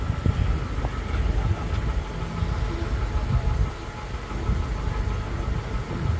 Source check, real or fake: real